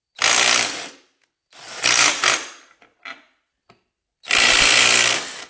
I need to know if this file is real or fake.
real